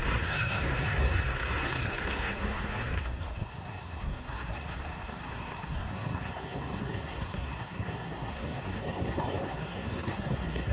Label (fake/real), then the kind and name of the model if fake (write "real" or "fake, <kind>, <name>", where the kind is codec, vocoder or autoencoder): fake, codec, SNAC